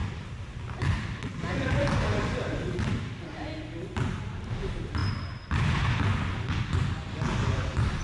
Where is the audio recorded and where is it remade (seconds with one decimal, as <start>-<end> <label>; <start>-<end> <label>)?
0.0-8.0 recorded